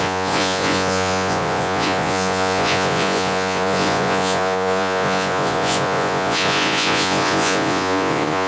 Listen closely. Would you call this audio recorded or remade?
remade